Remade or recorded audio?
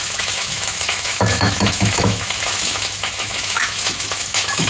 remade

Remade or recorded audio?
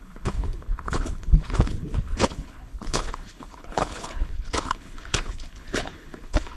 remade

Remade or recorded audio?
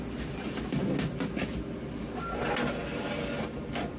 recorded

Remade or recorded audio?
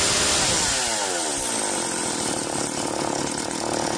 recorded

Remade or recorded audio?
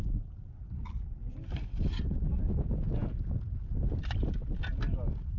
recorded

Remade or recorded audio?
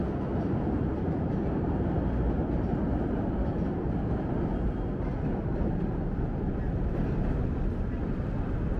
recorded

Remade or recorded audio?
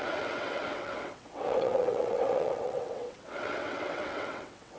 remade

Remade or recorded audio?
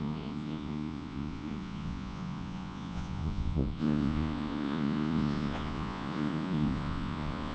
remade